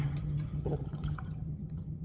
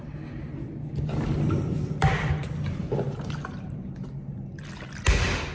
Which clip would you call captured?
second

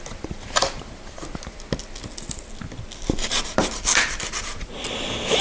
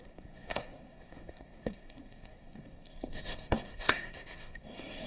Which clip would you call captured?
first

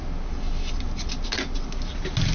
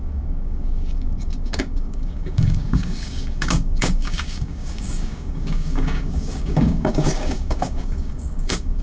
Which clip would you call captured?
first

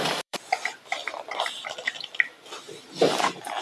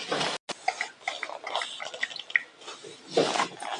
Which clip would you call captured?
second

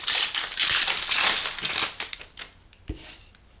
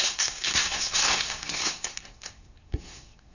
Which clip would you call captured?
first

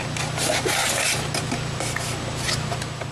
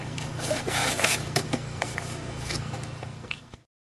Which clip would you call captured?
first